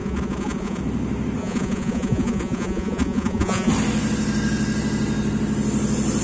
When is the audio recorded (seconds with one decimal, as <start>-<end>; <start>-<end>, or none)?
0.8-1.4; 3.7-6.2